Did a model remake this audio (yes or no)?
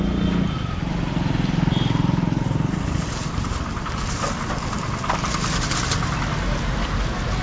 no